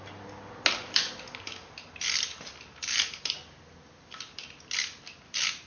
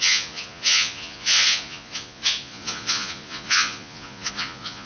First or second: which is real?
first